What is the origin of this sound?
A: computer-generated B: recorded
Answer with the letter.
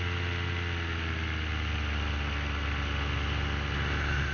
B